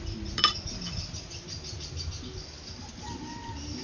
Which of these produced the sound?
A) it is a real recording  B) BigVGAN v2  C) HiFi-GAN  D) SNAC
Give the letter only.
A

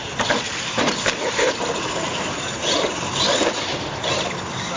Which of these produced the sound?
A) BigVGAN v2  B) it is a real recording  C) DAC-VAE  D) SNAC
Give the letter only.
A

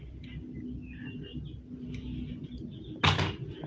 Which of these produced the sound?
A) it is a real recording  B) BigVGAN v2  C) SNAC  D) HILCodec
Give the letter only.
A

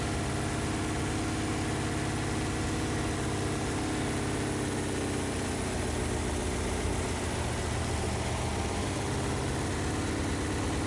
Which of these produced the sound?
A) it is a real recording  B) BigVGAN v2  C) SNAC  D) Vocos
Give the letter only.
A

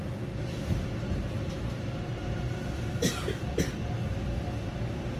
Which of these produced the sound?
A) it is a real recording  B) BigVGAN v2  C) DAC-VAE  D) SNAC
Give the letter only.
A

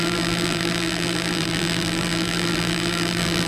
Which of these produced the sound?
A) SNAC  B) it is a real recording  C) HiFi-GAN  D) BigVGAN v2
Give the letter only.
D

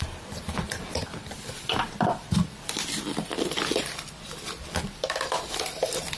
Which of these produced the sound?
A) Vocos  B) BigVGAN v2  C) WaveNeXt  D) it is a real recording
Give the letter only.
B